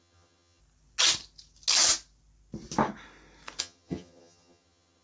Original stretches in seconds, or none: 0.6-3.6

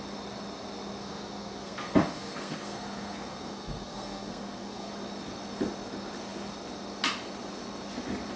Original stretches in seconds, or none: 0.0-1.0; 4.9-8.4

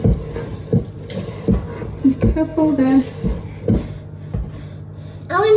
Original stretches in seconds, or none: 0.0-0.7; 2.0-2.5; 3.4-5.6

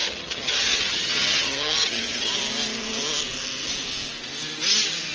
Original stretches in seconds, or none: 2.3-5.1